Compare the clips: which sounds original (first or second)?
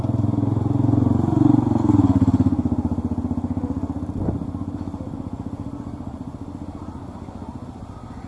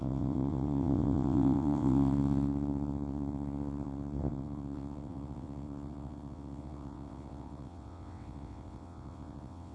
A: first